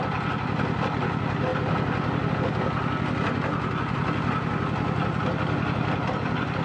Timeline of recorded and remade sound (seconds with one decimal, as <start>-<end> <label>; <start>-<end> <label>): 0.0-6.6 recorded